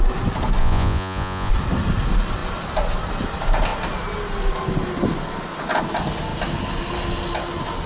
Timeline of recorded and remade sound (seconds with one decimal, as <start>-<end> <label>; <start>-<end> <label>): 0.0-0.6 recorded; 0.6-1.5 remade; 1.5-7.9 recorded